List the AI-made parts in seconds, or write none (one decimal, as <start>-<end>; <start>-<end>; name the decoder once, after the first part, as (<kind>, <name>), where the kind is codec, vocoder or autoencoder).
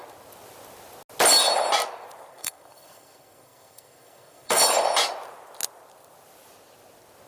2.3-4.6 (codec, SNAC)